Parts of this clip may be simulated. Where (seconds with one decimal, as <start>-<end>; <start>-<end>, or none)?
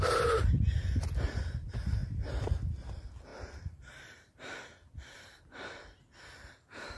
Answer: 3.3-5.4